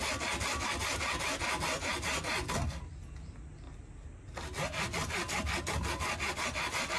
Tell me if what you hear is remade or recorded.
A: recorded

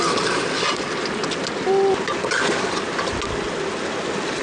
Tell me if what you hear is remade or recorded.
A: recorded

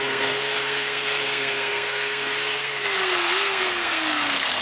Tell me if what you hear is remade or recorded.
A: remade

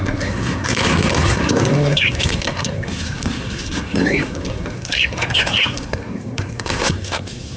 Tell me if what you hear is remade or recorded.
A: remade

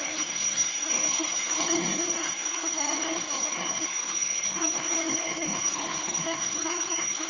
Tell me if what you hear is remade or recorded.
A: remade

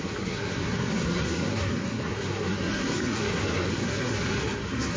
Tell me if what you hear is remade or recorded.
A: remade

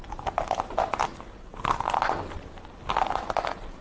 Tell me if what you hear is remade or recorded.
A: recorded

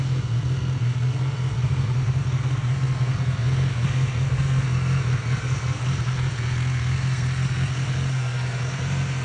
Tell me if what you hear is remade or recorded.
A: remade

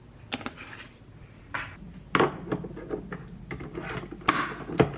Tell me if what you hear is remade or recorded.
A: recorded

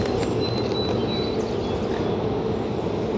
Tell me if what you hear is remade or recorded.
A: recorded